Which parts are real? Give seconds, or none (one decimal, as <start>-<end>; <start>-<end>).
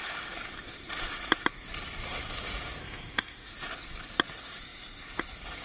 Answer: 0.0-2.8; 3.5-5.6